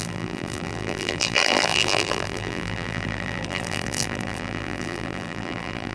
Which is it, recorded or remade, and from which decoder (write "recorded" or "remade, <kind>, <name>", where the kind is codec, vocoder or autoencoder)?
remade, vocoder, BigVGAN v2